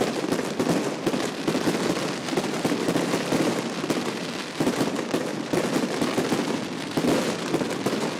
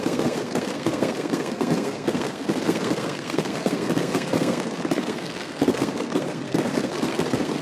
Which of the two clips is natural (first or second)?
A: first